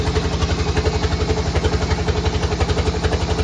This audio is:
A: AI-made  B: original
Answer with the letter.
B